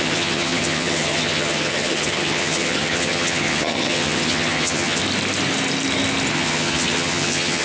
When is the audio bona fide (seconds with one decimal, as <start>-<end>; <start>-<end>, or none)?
5.0-6.3